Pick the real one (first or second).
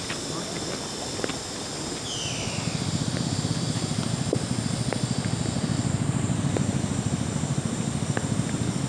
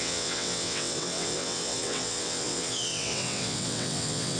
first